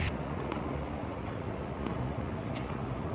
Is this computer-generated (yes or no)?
yes